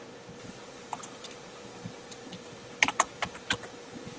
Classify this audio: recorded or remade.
remade